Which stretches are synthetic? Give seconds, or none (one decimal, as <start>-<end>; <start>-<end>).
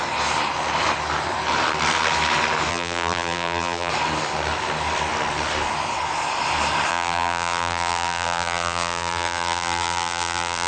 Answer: 2.7-3.9; 6.9-10.7